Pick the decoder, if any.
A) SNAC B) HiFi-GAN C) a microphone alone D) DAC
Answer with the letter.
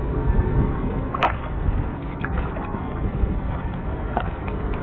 A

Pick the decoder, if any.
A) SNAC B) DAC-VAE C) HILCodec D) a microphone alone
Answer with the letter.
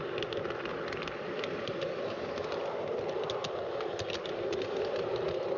D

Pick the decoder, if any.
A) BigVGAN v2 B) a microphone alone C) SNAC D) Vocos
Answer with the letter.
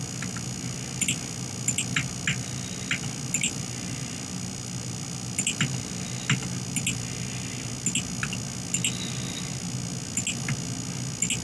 B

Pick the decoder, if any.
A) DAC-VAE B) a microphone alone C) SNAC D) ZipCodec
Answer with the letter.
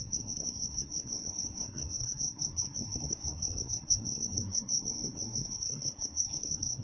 C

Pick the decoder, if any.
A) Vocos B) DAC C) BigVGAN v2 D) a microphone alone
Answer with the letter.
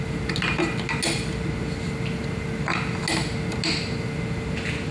D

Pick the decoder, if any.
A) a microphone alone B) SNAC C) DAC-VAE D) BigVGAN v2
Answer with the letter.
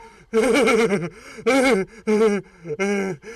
D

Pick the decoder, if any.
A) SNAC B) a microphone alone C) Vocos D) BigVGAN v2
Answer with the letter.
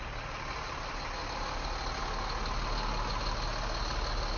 B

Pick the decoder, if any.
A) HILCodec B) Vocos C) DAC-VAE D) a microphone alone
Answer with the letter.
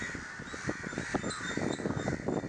D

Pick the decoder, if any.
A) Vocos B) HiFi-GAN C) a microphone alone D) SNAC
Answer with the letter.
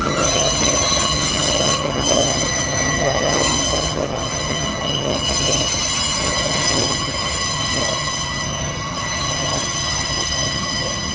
B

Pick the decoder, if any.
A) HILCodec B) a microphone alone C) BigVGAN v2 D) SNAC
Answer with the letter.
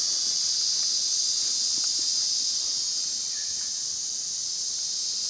B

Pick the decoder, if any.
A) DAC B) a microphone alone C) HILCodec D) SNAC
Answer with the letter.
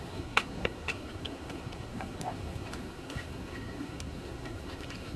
D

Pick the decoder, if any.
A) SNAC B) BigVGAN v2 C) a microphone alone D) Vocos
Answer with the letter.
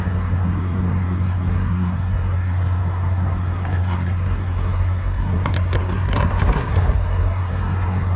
A